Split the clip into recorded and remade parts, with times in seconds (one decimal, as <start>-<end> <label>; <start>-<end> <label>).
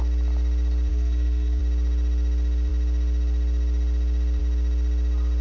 0.0-0.9 recorded; 0.9-1.6 remade; 1.6-5.4 recorded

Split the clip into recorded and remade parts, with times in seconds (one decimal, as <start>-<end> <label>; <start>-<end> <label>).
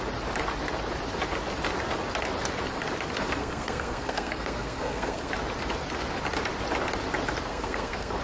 0.0-3.4 recorded; 3.4-5.3 remade; 5.3-7.5 recorded; 7.5-8.2 remade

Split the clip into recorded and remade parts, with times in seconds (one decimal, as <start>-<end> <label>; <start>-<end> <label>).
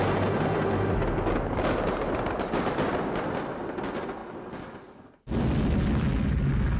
0.0-6.8 recorded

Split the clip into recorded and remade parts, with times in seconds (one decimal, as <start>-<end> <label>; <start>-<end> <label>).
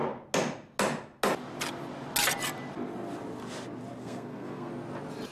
0.0-4.0 recorded; 4.0-4.7 remade; 4.7-5.3 recorded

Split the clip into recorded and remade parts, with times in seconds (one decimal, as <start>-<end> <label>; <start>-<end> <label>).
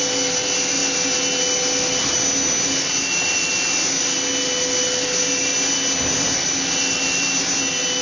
0.0-8.0 recorded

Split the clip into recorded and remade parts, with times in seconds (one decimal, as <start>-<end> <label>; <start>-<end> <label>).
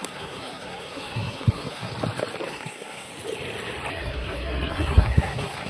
0.0-1.9 remade; 1.9-2.5 recorded; 2.5-3.1 remade; 3.1-3.9 recorded; 3.9-5.7 remade